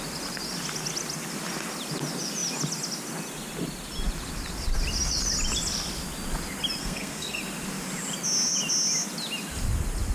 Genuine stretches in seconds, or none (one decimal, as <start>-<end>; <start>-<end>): 0.0-6.8; 7.4-10.1